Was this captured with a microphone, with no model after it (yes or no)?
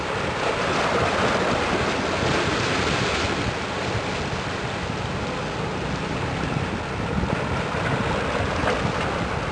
yes